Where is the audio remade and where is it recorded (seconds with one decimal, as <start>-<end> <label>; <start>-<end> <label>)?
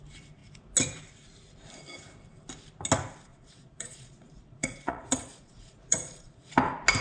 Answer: 0.0-3.3 recorded; 3.3-6.5 remade; 6.5-7.0 recorded